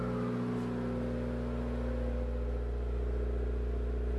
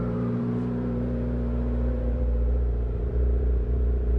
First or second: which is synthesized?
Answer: second